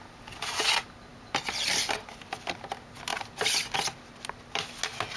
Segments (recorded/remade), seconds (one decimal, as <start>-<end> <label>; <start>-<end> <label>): 0.0-1.1 recorded; 1.1-2.6 remade; 2.6-3.1 recorded; 3.1-4.7 remade; 4.7-5.2 recorded